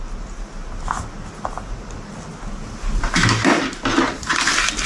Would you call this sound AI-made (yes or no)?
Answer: no